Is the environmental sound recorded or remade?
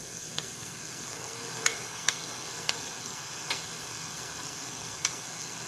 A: remade